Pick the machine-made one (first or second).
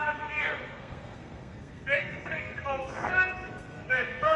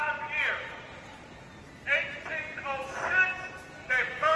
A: first